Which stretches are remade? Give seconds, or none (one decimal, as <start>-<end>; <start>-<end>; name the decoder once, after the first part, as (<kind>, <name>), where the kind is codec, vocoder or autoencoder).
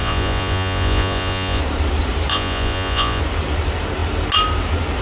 0.0-1.6 (vocoder, Vocos); 2.3-3.2